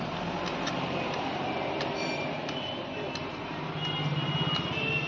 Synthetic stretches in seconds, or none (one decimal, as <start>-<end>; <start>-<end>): none